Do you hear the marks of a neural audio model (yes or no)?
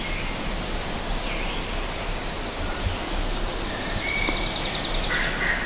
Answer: no